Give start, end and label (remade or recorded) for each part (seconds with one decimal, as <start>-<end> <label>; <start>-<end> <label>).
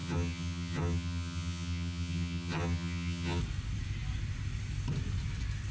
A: 0.0-3.4 remade; 3.4-5.7 recorded